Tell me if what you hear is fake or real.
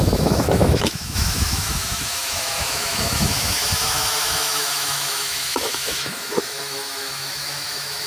fake